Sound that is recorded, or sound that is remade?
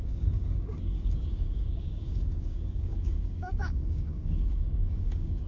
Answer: remade